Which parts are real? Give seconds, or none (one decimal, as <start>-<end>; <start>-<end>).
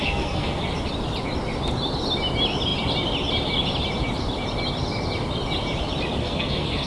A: 0.6-6.2